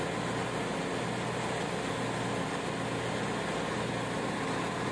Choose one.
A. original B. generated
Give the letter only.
A